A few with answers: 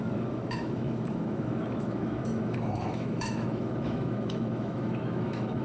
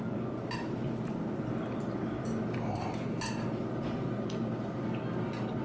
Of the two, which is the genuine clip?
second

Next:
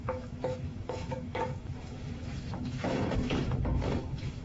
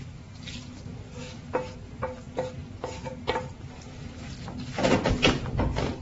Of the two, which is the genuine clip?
second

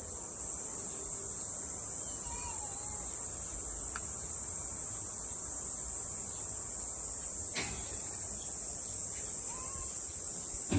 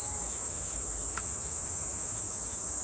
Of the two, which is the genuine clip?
first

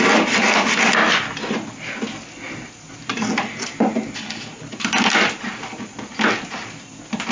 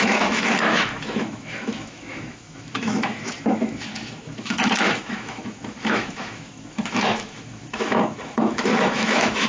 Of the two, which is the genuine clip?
first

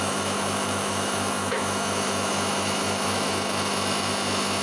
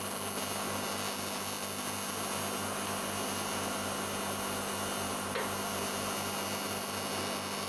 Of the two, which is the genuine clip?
second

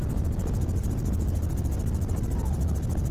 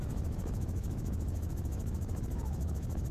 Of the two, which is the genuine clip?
first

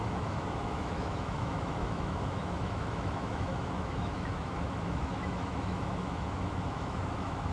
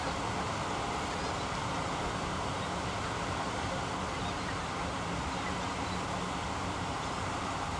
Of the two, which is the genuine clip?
second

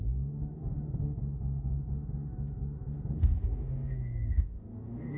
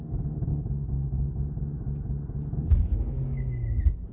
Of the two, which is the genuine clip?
second